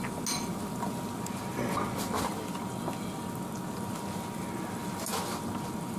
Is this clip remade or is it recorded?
recorded